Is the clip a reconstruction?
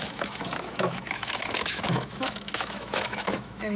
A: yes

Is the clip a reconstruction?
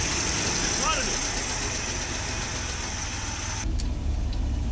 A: no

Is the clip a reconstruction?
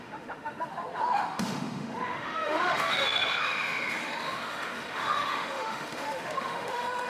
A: yes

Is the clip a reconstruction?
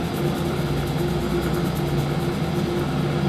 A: no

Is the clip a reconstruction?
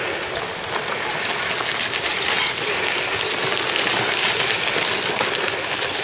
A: no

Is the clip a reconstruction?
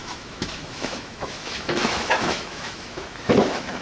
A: yes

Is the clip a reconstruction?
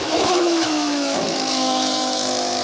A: yes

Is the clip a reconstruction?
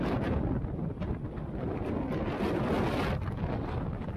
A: no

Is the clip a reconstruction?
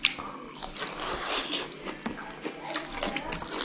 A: no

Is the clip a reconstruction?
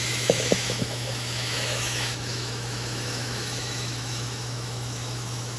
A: yes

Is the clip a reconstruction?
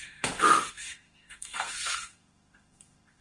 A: yes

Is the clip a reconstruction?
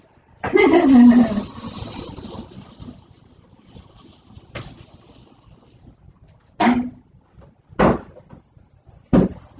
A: no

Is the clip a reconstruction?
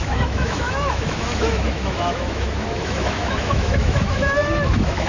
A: yes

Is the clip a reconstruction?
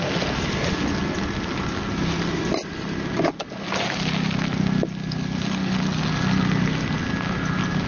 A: no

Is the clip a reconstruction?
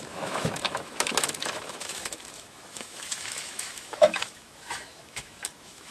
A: yes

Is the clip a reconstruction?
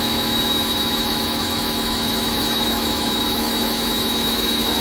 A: yes